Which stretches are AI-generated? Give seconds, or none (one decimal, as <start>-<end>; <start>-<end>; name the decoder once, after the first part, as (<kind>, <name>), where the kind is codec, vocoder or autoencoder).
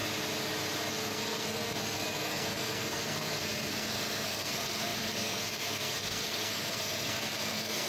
0.9-7.9 (codec, SNAC)